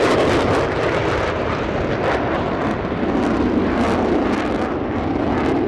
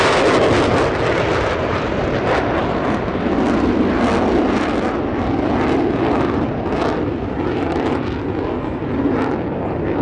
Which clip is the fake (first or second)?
first